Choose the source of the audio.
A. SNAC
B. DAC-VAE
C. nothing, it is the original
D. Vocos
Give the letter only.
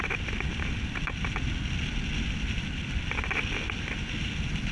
C